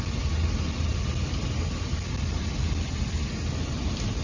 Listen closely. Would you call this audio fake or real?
real